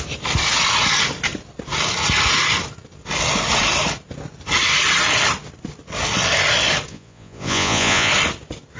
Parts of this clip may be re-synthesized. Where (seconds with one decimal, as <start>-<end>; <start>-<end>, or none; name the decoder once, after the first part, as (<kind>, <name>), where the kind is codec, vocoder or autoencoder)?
6.9-8.1 (vocoder, Vocos)